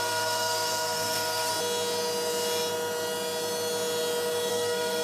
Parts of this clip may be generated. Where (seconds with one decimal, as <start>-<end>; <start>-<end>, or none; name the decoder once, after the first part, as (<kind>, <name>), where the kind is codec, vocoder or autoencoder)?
0.0-1.5 (codec, SNAC); 4.5-5.0